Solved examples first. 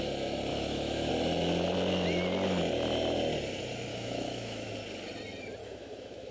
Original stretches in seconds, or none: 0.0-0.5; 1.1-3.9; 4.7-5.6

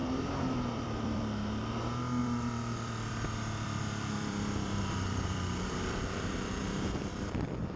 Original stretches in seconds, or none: 1.2-2.2; 5.8-6.6